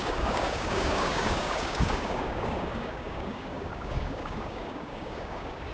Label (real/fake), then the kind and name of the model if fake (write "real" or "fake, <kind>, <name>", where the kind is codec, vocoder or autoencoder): fake, codec, DAC